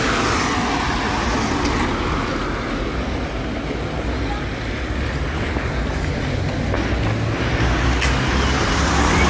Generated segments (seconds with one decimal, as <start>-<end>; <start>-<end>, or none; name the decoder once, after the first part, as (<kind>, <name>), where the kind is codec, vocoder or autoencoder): none

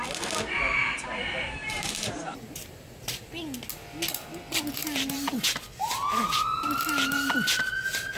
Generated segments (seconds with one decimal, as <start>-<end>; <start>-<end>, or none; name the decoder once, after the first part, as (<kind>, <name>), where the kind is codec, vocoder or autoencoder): 1.6-3.2 (vocoder, BigVGAN v2); 4.8-5.4

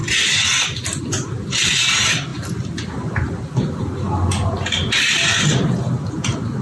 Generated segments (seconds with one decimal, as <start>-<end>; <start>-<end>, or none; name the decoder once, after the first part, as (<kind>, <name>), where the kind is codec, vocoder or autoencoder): 0.0-6.6 (vocoder, BigVGAN v2)

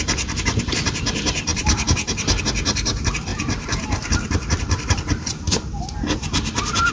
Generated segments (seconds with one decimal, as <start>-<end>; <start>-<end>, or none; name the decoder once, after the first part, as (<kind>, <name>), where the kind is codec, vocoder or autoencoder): 1.5-2.4 (vocoder, BigVGAN v2); 3.3-5.7

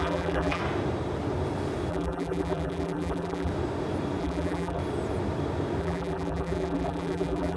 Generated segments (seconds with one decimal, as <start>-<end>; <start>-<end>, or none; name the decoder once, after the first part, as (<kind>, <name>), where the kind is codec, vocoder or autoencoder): 0.0-0.6 (vocoder, BigVGAN v2); 1.9-3.5; 4.2-4.8; 5.8-7.6

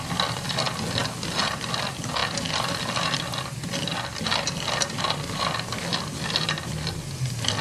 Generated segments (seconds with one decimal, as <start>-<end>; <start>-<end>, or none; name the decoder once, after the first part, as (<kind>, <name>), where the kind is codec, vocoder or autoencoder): none